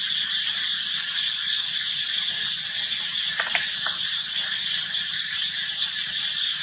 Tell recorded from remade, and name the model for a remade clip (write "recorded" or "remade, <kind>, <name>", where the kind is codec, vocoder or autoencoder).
remade, vocoder, BigVGAN v2